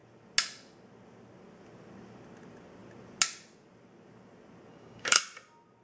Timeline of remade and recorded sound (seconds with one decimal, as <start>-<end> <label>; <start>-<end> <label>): 0.0-4.7 recorded; 4.7-5.2 remade; 5.2-5.8 recorded